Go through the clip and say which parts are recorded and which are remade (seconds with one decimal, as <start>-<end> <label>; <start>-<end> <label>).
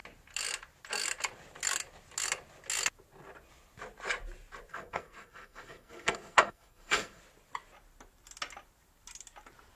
0.0-4.7 recorded; 4.7-7.2 remade; 7.2-9.8 recorded